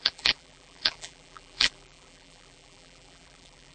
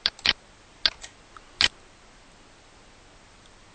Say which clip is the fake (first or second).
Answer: first